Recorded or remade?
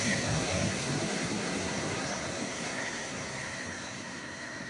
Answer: remade